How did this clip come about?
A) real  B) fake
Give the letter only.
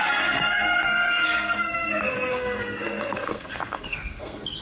B